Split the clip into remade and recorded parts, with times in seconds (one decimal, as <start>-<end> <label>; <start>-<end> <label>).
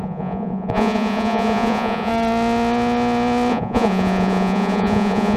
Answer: 0.0-2.1 remade; 2.1-3.5 recorded; 3.5-5.4 remade